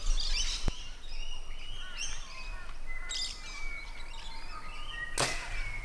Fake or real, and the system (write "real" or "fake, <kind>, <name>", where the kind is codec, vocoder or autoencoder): real